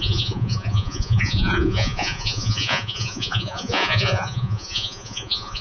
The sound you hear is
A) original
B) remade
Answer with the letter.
B